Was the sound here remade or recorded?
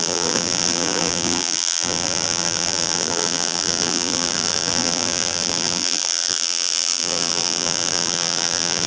remade